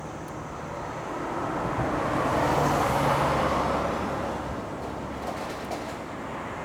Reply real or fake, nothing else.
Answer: real